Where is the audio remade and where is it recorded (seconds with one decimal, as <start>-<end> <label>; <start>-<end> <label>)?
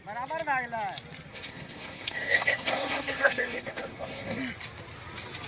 0.0-1.3 recorded; 1.3-4.4 remade; 4.4-5.5 recorded